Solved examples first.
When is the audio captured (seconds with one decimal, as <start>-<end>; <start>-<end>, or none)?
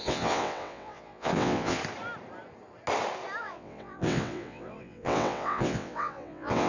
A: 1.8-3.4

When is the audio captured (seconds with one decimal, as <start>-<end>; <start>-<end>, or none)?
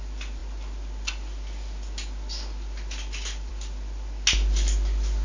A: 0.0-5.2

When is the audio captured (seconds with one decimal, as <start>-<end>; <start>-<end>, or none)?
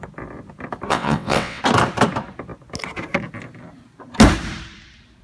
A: 0.0-0.9; 1.6-5.2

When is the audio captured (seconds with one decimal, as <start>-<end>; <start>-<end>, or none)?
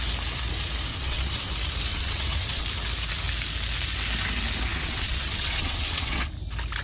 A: 0.0-0.9; 1.5-1.9; 2.6-4.7; 6.3-6.8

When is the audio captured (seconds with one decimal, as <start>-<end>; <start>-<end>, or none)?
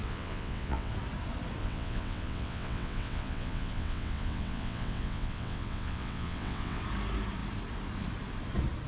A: 0.9-1.6; 6.8-8.9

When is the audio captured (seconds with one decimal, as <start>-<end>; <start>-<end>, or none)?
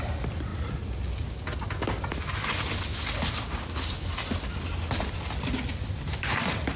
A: 0.0-6.8